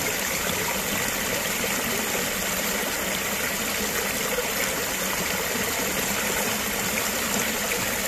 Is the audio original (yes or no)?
yes